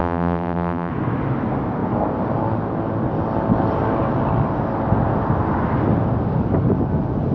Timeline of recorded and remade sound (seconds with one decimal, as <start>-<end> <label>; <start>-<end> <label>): 0.0-0.9 remade; 0.9-7.3 recorded